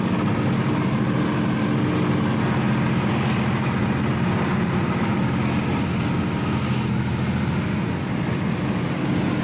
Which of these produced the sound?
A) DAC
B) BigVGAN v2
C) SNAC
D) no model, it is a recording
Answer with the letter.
D